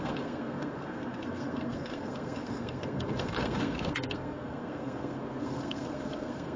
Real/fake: fake